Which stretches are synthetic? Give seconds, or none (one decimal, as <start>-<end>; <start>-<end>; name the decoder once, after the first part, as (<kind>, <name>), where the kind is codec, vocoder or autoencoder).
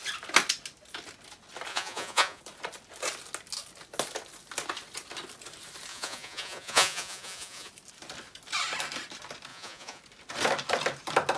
1.7-2.4 (vocoder, Vocos); 5.9-7.7; 9.5-10.0